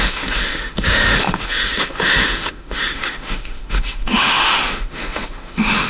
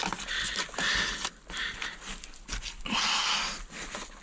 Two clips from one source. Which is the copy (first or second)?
first